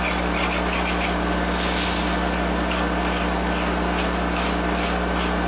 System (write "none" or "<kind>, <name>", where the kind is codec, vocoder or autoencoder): none